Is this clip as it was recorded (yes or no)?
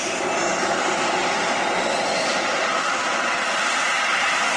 yes